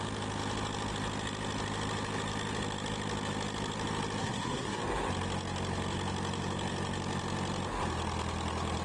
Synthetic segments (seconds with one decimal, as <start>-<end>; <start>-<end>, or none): 4.2-4.8